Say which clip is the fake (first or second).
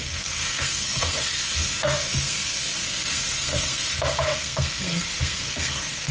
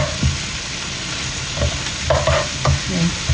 first